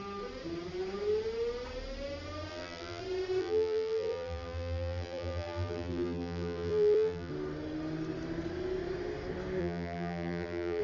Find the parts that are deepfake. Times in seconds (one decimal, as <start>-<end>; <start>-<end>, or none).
2.5-3.0; 3.4-7.3; 9.6-10.8